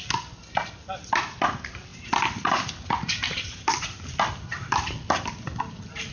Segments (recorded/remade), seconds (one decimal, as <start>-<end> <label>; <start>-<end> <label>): 0.0-6.1 recorded